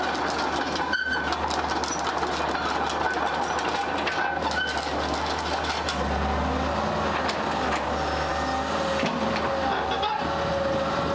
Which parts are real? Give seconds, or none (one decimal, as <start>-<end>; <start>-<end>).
0.0-11.1